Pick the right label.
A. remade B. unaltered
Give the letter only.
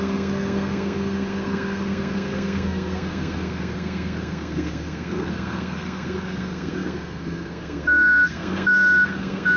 A